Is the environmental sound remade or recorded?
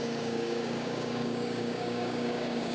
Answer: remade